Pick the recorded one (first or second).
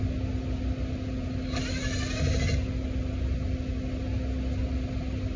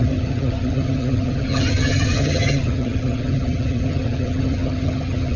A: first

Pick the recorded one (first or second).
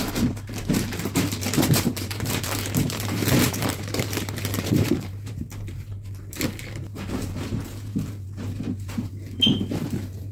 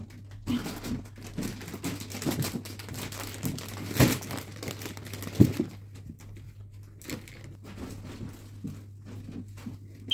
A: second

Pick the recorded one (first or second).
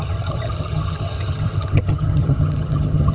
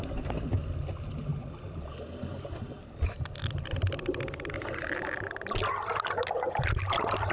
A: second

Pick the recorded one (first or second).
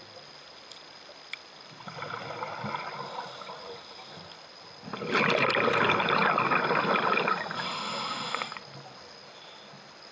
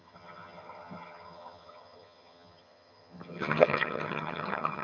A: first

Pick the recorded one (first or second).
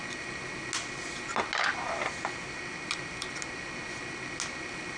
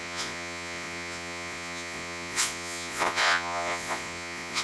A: first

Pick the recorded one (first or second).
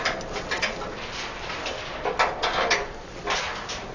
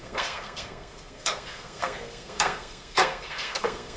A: first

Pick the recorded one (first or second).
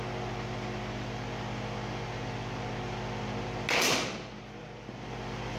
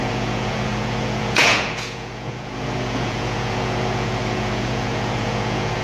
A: first